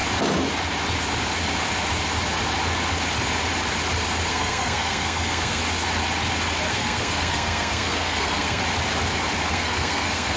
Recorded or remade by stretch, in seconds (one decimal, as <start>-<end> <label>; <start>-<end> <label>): 0.0-4.3 recorded; 4.3-5.6 remade; 5.6-6.7 recorded; 6.7-8.6 remade; 8.6-9.5 recorded; 9.5-10.4 remade